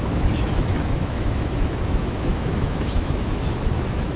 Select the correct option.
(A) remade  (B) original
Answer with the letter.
A